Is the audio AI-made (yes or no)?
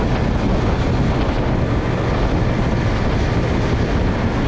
no